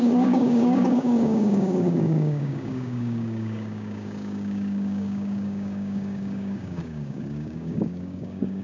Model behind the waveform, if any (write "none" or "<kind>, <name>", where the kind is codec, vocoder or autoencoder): codec, DAC